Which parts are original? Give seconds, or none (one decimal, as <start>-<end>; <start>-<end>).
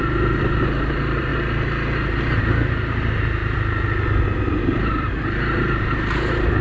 1.3-2.4; 3.4-4.5